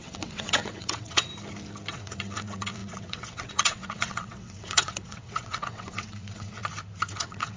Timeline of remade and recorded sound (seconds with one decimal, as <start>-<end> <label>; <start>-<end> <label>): 0.0-1.3 remade; 1.3-1.9 recorded; 1.9-6.6 remade; 6.6-7.1 recorded; 7.1-7.6 remade